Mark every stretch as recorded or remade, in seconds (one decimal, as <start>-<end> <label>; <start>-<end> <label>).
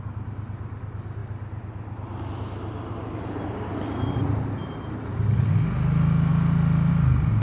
0.0-7.4 recorded